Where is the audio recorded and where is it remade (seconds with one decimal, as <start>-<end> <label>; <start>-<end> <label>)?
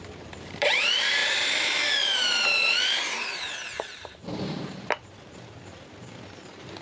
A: 0.0-6.8 remade